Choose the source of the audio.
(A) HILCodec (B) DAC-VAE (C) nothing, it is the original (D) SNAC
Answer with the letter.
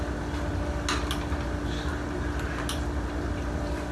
C